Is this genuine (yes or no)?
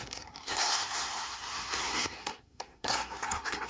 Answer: no